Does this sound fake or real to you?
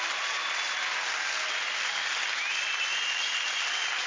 real